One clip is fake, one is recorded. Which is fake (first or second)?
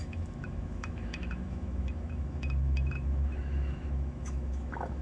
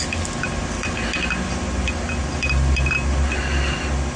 first